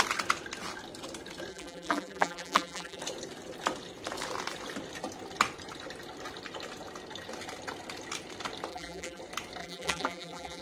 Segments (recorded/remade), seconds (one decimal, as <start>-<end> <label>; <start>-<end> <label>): 0.0-1.5 recorded; 1.5-3.0 remade; 3.0-8.7 recorded; 8.7-9.2 remade; 9.2-9.6 recorded; 9.6-10.6 remade